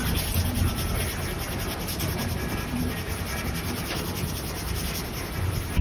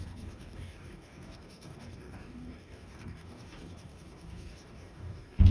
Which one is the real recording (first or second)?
first